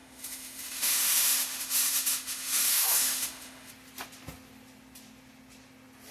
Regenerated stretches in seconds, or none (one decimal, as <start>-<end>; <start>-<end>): 0.0-3.7